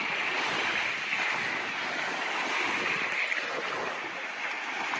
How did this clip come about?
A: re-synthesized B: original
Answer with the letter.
B